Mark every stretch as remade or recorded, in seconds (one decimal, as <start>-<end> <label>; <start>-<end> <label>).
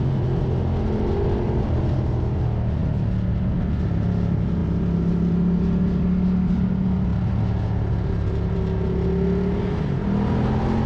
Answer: 0.0-10.9 recorded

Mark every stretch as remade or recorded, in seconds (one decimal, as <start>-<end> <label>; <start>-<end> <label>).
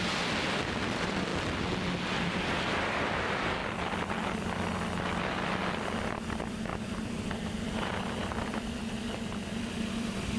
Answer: 0.0-1.3 remade; 1.3-2.3 recorded; 2.3-3.6 remade; 3.6-4.3 recorded; 4.3-10.4 remade